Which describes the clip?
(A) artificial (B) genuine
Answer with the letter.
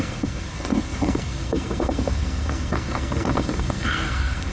A